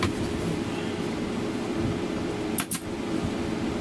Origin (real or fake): real